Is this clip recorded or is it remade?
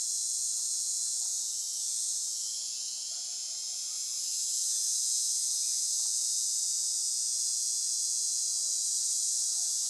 remade